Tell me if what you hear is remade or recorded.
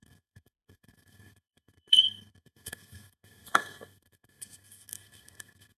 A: remade